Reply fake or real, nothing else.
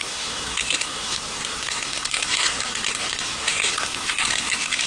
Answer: fake